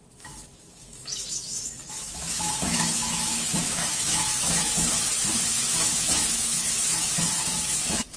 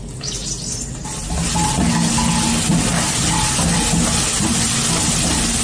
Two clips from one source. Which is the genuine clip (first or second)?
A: second